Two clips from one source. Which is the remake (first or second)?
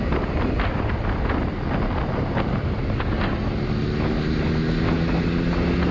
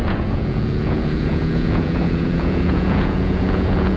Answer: second